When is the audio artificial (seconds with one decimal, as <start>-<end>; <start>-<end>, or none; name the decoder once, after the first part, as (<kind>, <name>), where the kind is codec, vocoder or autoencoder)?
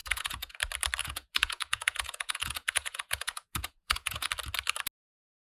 0.0-0.6 (vocoder, Vocos); 1.0-4.3